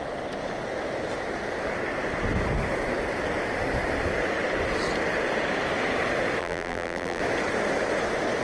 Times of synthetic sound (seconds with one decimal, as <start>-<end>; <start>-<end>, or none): 6.4-7.2